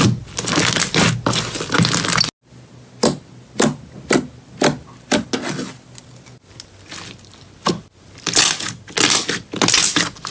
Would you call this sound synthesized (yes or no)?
no